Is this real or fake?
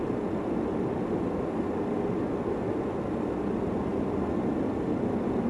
real